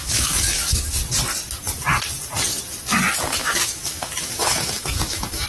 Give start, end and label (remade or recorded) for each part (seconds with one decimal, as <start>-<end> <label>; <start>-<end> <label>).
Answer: 0.0-1.0 remade; 1.0-3.2 recorded; 3.2-5.5 remade